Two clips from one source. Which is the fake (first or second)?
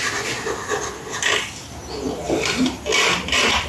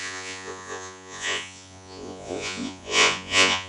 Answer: second